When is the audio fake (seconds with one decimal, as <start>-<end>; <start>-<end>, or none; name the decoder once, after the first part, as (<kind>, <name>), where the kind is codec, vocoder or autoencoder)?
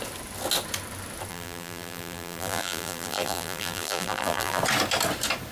1.3-4.6 (vocoder, BigVGAN v2)